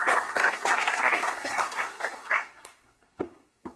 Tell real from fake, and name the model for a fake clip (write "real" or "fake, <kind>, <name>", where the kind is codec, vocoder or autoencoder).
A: fake, codec, SNAC